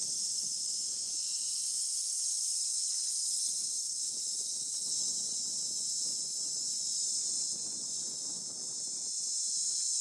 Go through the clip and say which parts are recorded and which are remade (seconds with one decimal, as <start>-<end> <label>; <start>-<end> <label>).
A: 0.0-2.0 remade; 2.0-6.1 recorded; 6.1-8.4 remade; 8.4-10.0 recorded